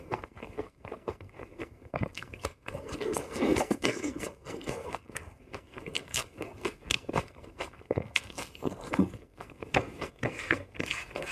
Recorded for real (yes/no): no